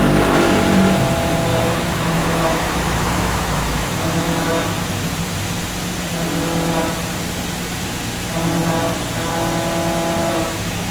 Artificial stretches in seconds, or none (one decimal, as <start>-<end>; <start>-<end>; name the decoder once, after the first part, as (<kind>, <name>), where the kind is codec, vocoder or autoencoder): 1.5-4.5 (autoencoder, DAC-VAE); 10.2-10.9